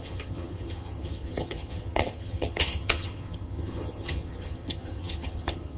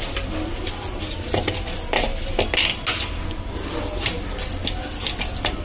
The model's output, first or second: first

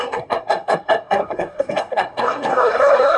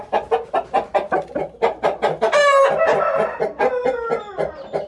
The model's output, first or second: first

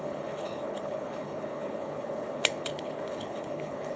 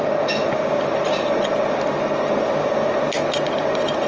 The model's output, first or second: first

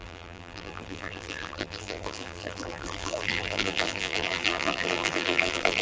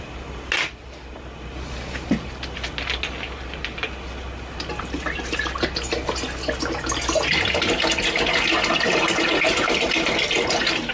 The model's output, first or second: first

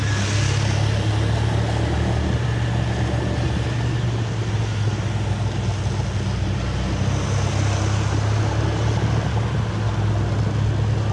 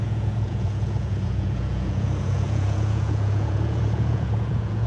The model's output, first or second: second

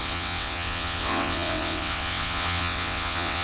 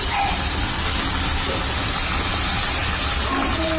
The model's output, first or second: first